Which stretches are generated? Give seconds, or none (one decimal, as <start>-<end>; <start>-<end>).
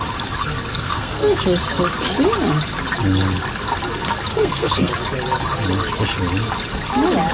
0.7-1.4; 4.3-4.9